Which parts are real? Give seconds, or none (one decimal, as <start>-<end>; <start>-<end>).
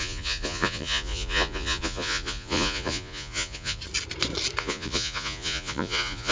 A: 3.8-4.6